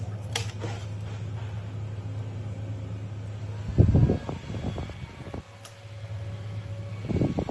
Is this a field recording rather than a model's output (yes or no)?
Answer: yes